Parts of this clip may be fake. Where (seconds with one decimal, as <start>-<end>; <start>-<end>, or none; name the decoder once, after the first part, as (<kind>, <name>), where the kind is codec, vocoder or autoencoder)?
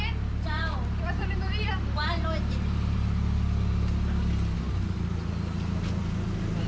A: 1.2-1.7 (vocoder, BigVGAN v2)